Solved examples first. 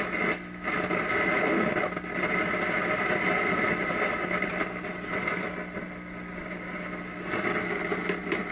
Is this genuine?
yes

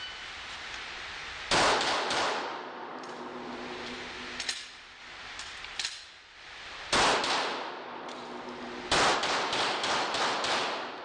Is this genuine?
yes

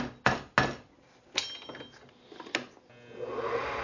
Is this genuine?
yes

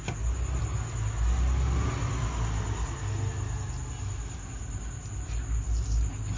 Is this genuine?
yes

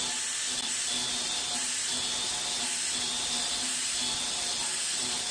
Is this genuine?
yes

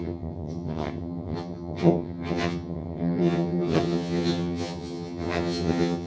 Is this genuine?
no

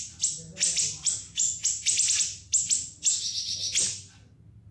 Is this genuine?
yes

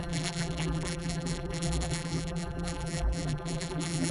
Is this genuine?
no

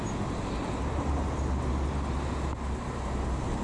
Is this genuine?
yes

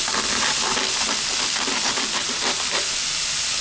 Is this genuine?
yes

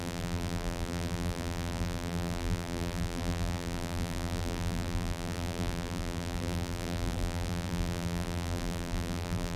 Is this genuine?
no